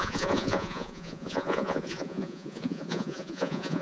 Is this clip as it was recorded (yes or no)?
no